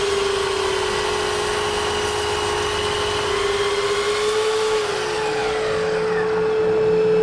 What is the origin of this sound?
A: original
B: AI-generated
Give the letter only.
A